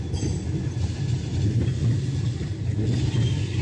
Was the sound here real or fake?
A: real